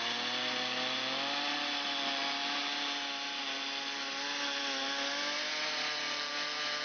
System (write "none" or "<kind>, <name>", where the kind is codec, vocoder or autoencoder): none